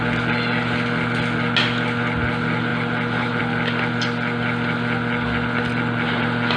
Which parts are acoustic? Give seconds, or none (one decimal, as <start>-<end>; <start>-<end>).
0.0-6.6

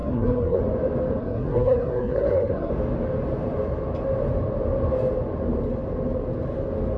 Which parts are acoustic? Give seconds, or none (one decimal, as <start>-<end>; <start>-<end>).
0.6-1.2; 2.7-7.0

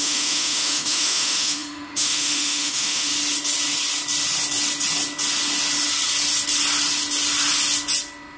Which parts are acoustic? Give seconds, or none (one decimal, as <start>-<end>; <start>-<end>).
3.1-8.4

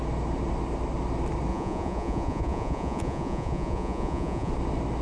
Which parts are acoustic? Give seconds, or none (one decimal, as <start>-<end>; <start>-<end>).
0.0-1.5; 4.5-5.0